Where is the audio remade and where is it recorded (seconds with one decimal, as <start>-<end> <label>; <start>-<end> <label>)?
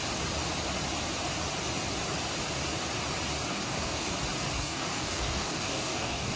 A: 0.0-3.5 recorded; 3.5-4.1 remade; 4.1-4.6 recorded; 4.6-6.4 remade